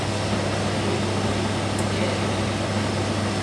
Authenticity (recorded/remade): recorded